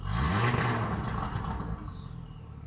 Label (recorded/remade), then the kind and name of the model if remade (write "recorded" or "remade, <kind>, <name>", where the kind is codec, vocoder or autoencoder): recorded